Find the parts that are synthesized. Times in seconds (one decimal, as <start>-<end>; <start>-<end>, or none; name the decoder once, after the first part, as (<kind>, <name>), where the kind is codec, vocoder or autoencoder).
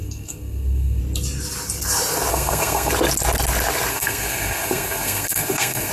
0.0-1.0 (codec, SNAC); 2.3-2.9; 3.9-5.9